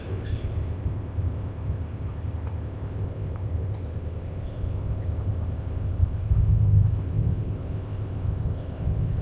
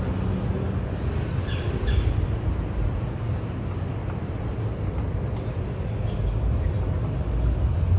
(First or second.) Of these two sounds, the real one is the second